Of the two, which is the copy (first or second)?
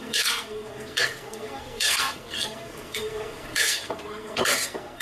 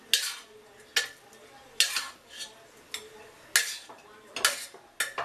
first